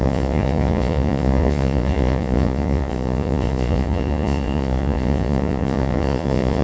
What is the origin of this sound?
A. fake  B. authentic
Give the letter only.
A